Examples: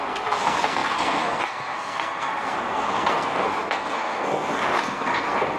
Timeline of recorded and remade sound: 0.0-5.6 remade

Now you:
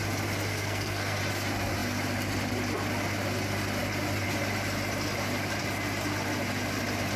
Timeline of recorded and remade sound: 0.0-0.5 recorded; 0.5-1.2 remade; 1.2-7.2 recorded

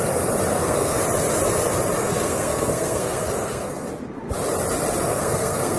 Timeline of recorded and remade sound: 0.0-0.5 recorded; 0.5-1.0 remade; 1.0-2.0 recorded; 2.0-3.9 remade; 3.9-5.1 recorded; 5.1-5.8 remade